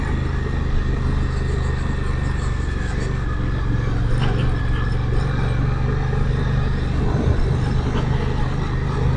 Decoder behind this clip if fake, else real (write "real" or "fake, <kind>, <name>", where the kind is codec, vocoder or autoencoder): real